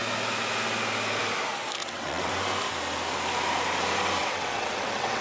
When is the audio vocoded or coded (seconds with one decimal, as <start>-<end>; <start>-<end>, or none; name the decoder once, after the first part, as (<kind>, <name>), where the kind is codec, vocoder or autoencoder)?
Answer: 1.8-2.3 (vocoder, WaveNeXt); 4.2-5.2